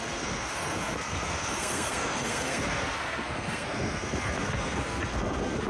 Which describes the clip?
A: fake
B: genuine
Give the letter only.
A